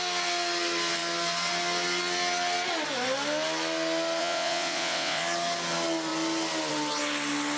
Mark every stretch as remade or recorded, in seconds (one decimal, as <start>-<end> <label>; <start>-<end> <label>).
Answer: 0.0-4.2 recorded; 4.2-5.2 remade; 5.2-7.6 recorded